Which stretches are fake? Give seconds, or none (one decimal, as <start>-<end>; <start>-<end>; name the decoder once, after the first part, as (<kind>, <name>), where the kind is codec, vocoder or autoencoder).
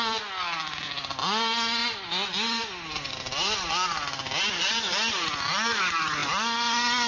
none